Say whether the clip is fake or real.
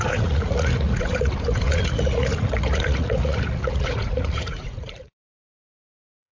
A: fake